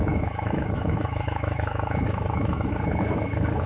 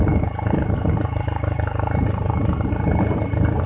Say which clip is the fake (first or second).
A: first